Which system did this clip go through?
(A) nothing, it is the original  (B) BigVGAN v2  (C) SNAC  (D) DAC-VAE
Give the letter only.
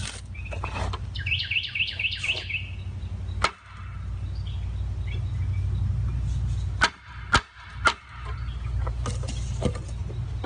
A